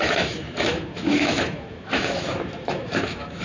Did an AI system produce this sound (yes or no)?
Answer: yes